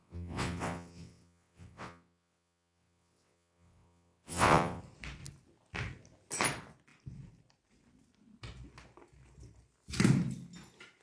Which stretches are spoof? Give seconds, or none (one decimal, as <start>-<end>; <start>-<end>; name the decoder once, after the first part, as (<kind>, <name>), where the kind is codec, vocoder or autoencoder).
0.0-4.8 (vocoder, WaveNeXt)